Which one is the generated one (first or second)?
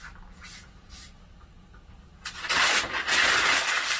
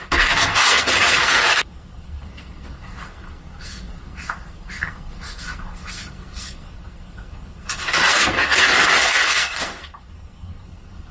second